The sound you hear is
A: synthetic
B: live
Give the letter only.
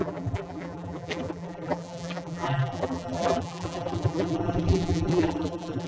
A